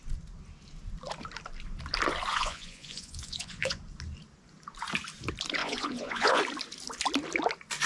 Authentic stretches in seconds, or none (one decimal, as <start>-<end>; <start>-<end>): 0.0-2.3; 3.8-5.6; 6.4-7.9